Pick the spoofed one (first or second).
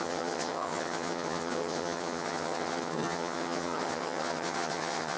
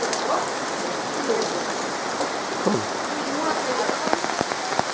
first